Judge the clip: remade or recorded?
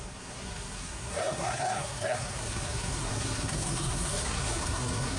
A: remade